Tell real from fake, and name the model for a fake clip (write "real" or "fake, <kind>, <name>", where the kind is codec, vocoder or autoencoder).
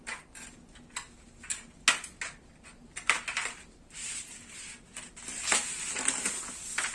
real